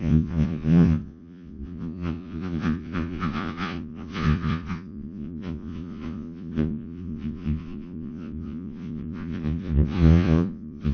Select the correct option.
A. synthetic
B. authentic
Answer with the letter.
A